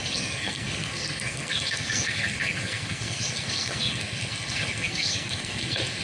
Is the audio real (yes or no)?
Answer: no